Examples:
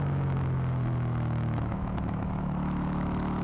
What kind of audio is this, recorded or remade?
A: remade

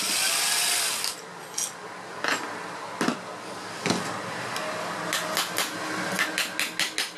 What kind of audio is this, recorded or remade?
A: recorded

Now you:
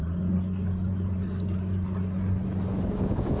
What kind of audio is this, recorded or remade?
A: recorded